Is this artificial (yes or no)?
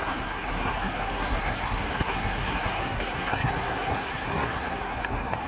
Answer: yes